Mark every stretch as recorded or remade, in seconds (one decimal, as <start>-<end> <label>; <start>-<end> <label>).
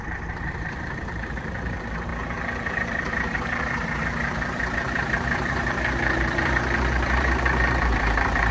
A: 0.0-2.1 remade; 2.1-2.7 recorded; 2.7-8.5 remade